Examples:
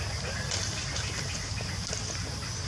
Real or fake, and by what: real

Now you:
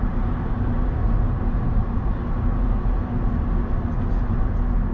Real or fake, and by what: real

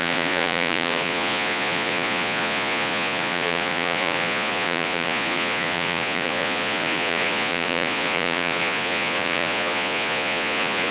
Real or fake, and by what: fake, vocoder, Vocos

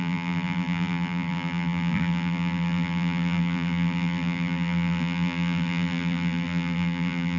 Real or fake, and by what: fake, vocoder, BigVGAN v2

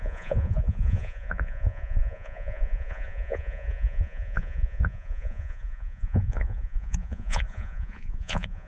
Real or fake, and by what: fake, vocoder, Vocos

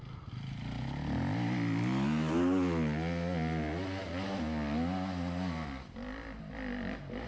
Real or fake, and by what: real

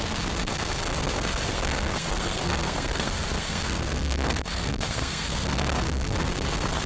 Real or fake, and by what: fake, codec, SNAC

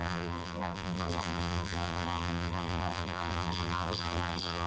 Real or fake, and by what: fake, vocoder, BigVGAN v2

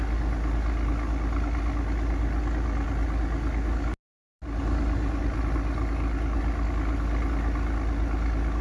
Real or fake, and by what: real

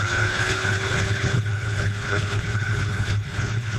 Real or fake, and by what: fake, codec, HILCodec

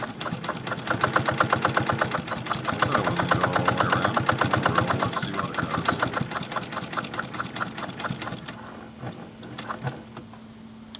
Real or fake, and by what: real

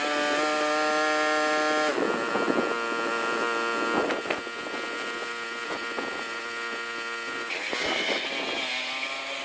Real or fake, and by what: real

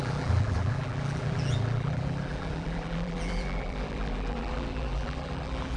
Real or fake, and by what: fake, vocoder, BigVGAN v2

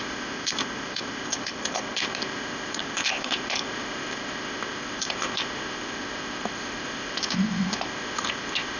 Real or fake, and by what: fake, codec, ZipCodec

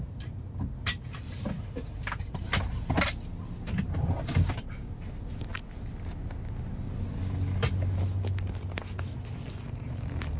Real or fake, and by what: real